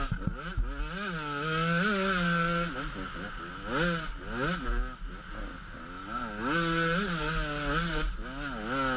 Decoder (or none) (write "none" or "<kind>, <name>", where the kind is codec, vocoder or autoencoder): none